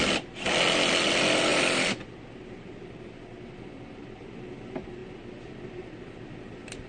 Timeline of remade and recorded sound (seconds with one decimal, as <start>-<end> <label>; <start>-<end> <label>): 0.0-6.9 recorded